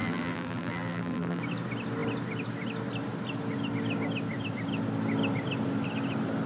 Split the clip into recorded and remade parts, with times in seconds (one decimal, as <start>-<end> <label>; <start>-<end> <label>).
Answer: 0.0-1.4 remade; 1.4-6.5 recorded